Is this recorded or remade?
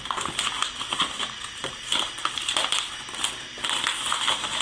recorded